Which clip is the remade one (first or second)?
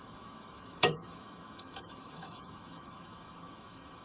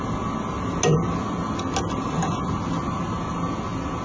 first